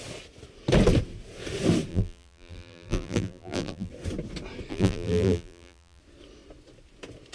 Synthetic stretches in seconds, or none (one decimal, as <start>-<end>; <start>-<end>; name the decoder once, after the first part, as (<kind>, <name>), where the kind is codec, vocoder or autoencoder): 1.9-3.9 (vocoder, BigVGAN v2); 4.7-6.0